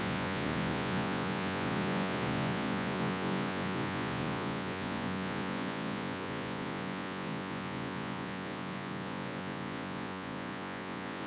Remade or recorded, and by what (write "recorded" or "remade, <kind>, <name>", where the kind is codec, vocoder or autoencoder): remade, vocoder, Vocos